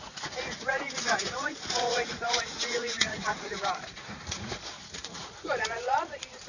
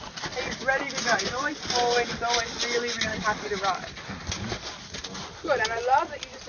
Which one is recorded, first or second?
second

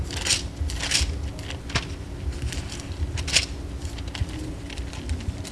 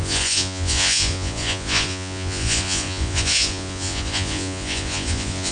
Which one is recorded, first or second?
first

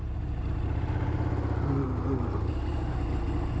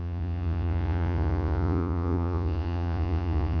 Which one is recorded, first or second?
first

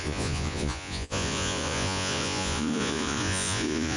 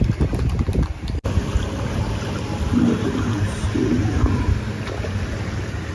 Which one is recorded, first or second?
second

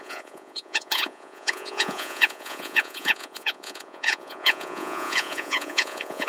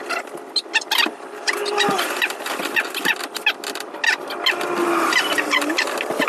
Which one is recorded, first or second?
second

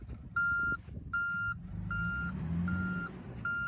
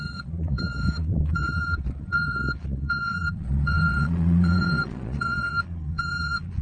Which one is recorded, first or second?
first